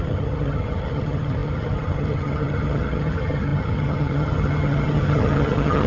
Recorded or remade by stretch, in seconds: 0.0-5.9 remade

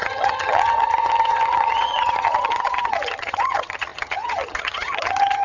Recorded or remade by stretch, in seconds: 0.0-5.4 remade

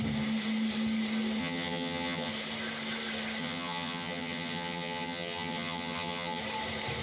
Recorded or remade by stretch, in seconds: 0.0-1.4 recorded; 1.4-2.3 remade; 2.3-3.4 recorded; 3.4-6.4 remade; 6.4-7.0 recorded

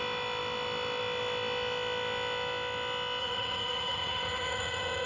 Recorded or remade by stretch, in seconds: 0.0-3.2 recorded; 3.2-5.1 remade

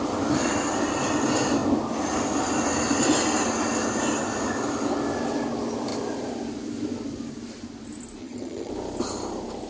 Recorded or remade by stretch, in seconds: 0.0-8.2 recorded; 8.2-8.7 remade; 8.7-9.7 recorded

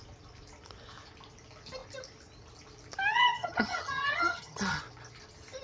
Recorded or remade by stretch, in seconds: 0.0-3.1 recorded; 3.1-4.8 remade; 4.8-5.6 recorded